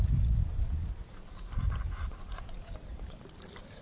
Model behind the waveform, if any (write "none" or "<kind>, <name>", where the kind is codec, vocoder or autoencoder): vocoder, BigVGAN v2